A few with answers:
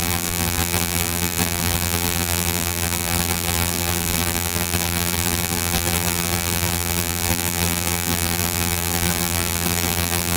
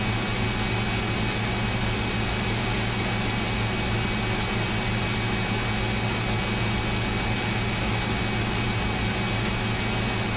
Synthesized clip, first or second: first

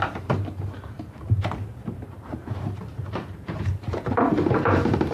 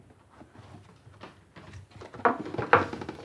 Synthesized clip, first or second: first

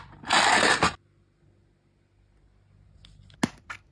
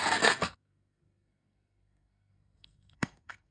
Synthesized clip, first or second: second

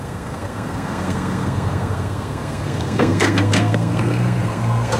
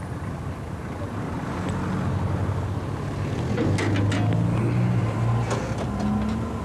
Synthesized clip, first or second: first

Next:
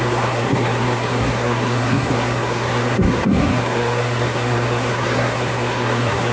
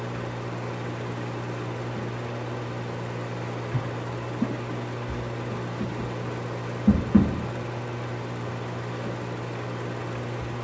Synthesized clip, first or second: first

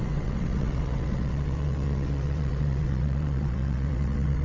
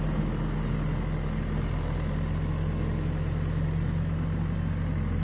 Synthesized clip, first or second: first